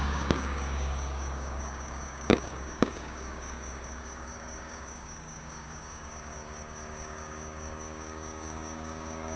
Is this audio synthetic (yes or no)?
yes